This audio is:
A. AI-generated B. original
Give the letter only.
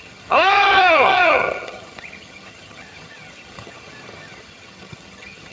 A